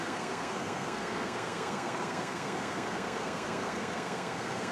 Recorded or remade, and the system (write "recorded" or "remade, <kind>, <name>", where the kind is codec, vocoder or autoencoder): remade, codec, SNAC